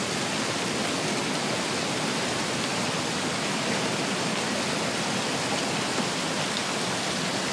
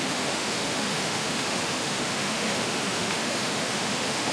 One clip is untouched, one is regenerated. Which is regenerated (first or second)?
second